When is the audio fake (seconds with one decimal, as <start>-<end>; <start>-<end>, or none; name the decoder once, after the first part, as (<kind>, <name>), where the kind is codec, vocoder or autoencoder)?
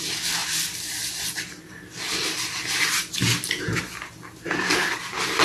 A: none